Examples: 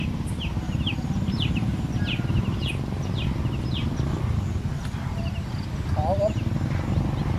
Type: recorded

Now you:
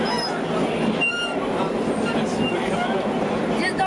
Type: recorded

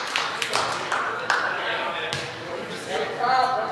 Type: remade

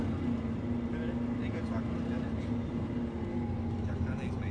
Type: recorded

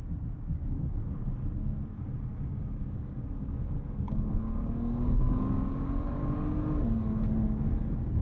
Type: remade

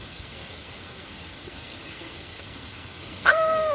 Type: remade